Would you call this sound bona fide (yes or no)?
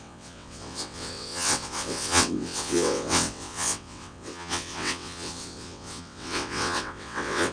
no